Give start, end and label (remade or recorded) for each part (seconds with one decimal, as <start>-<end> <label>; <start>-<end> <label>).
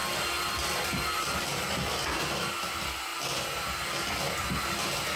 0.0-5.2 recorded